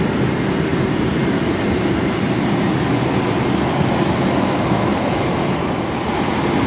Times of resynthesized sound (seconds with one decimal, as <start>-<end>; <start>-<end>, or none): 0.7-2.8